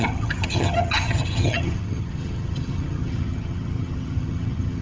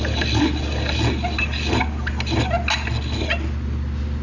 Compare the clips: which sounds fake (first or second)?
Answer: first